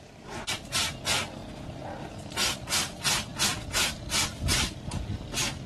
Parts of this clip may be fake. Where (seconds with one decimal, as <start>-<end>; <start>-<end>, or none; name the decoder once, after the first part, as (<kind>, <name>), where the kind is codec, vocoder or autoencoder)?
0.0-1.4 (vocoder, BigVGAN v2); 2.1-5.7